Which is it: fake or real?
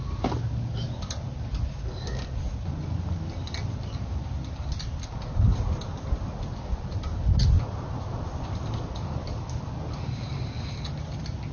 real